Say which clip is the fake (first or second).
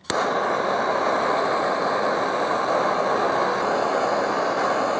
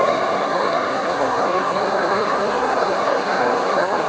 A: second